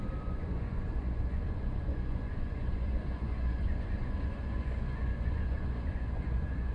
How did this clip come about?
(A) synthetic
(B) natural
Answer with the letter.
A